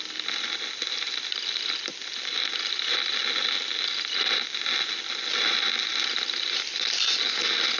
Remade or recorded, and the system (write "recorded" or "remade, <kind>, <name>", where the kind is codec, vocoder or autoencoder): recorded